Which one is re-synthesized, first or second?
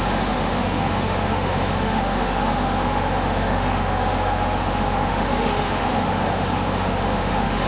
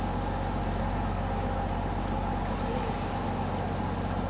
first